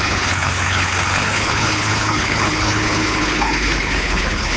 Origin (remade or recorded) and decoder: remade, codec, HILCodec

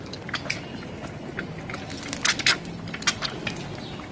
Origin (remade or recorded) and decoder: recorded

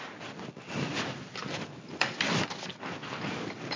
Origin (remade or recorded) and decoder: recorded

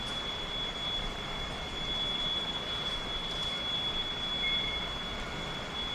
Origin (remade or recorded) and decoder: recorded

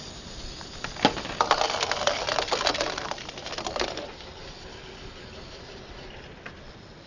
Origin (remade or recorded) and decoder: recorded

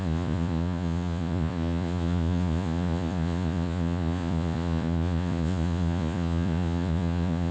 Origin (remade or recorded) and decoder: remade, vocoder, Vocos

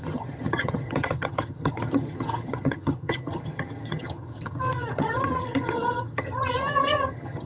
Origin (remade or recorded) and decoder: remade, vocoder, HiFi-GAN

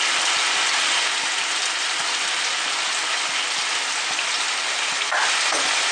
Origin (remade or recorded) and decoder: recorded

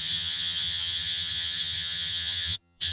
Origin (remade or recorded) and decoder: remade, vocoder, HiFi-GAN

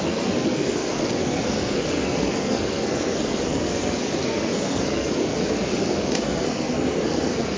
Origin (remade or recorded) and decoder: remade, codec, SNAC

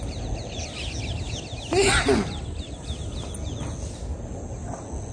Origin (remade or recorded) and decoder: recorded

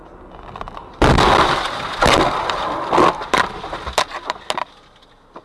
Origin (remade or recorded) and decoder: recorded